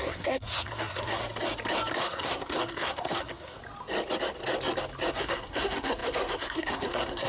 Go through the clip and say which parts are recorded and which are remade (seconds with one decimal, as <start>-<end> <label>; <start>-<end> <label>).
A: 0.0-1.2 remade; 1.2-1.9 recorded; 1.9-3.6 remade; 3.6-5.1 recorded; 5.1-7.3 remade